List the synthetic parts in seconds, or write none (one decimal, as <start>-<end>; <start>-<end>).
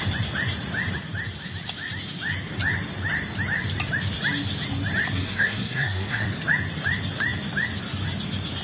5.2-6.3